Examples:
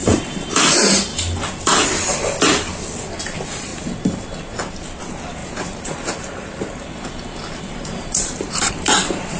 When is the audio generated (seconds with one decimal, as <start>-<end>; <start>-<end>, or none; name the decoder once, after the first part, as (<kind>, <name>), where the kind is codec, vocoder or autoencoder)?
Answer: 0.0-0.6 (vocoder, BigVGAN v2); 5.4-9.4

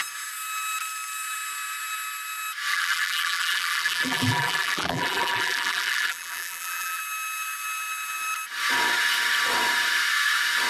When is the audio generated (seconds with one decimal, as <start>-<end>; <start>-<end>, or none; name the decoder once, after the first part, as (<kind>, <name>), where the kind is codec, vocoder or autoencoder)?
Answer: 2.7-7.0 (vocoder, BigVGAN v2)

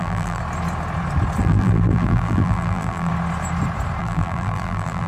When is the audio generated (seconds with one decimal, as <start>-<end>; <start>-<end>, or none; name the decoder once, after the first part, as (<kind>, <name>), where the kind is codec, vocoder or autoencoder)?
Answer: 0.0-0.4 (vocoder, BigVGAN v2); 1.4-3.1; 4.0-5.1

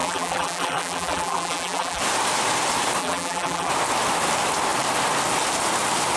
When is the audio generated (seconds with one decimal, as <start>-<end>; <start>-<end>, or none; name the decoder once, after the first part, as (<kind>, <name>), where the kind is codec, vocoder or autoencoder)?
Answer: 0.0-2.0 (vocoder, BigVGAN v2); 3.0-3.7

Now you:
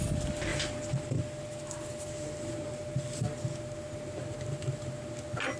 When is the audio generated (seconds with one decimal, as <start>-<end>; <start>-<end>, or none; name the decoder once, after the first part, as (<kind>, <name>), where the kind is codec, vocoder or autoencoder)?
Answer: none

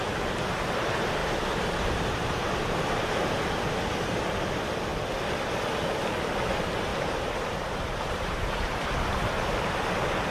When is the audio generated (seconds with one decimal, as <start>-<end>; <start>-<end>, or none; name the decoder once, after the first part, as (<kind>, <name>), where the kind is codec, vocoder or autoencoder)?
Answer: 1.2-3.7 (vocoder, BigVGAN v2); 6.9-8.8